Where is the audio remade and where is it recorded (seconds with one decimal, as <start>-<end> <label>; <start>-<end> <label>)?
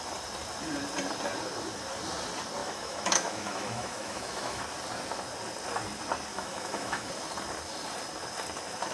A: 0.0-2.6 recorded; 2.6-4.6 remade; 4.6-6.3 recorded; 6.3-7.1 remade; 7.1-8.9 recorded